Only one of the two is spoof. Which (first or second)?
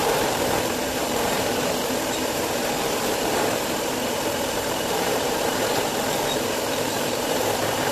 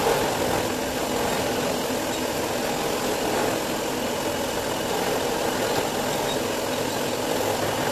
first